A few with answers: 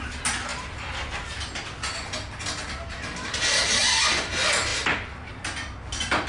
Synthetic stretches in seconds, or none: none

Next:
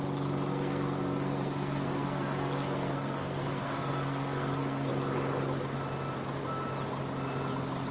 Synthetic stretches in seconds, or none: 0.5-4.9

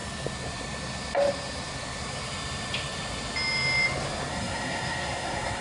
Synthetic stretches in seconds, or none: 4.3-5.6

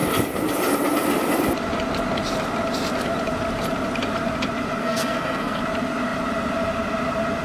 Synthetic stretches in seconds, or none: 4.8-5.6

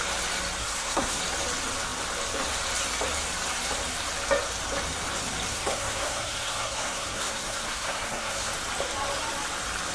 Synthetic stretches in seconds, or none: 0.6-1.2; 5.5-8.5

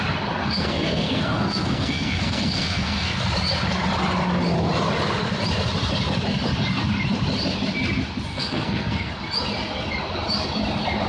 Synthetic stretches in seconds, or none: 0.4-3.2; 8.3-9.1

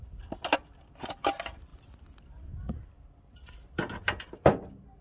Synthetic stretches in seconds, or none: none

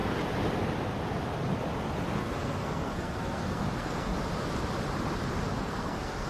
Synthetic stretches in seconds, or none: 2.2-4.1; 5.6-6.3